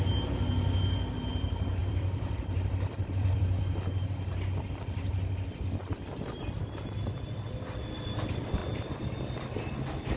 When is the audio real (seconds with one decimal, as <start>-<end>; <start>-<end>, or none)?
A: 0.0-1.8; 3.6-10.2